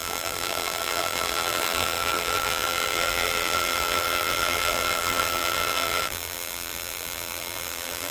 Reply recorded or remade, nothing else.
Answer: remade